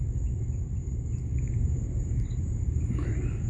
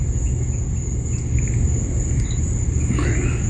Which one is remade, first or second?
first